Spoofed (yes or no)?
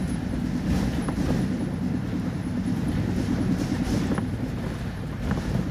no